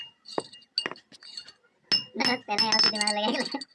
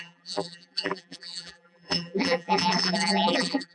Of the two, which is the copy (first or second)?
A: second